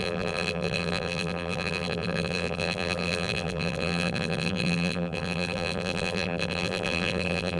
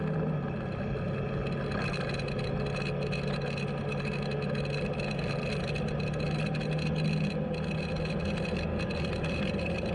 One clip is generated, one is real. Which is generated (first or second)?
first